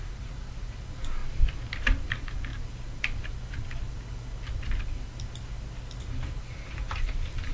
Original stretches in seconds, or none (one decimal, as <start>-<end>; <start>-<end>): 1.2-2.1; 2.5-6.0